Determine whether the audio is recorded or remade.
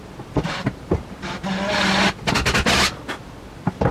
recorded